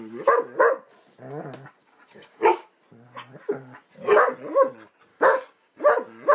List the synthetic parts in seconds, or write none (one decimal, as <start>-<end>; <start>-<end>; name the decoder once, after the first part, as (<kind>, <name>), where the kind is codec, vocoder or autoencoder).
1.8-2.7 (codec, DAC); 5.1-5.8